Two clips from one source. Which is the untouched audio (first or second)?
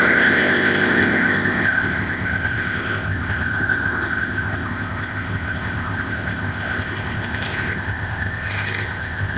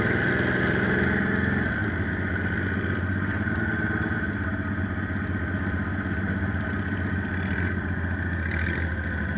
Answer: second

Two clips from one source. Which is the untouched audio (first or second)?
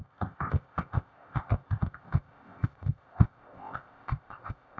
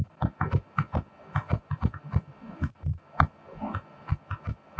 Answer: second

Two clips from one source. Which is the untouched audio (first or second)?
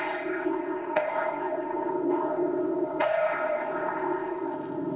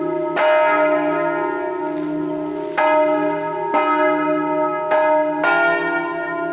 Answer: second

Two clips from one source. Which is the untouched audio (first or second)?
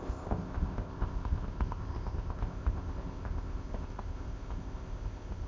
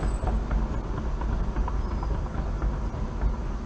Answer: second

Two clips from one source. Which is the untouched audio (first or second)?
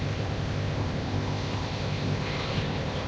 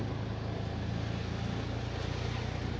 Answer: second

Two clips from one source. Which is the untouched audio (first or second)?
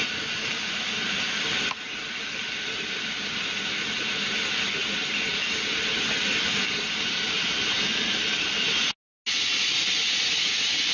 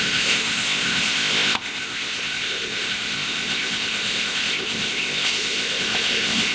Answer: first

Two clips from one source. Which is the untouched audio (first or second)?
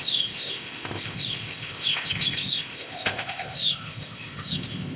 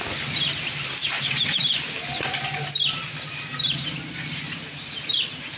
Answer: second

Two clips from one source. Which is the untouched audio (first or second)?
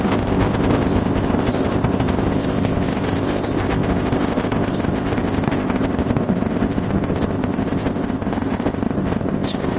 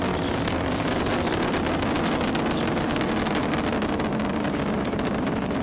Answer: second